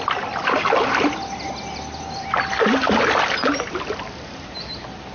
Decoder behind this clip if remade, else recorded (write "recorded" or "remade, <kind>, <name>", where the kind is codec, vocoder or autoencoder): recorded